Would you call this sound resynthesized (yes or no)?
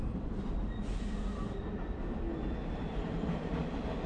no